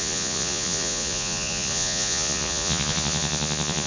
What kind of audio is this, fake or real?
fake